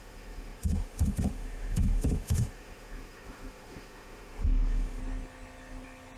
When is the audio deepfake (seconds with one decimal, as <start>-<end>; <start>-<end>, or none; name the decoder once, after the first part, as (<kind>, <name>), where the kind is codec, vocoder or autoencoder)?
0.0-5.0 (autoencoder, DAC-VAE)